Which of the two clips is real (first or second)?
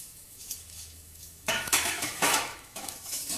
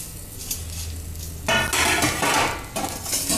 second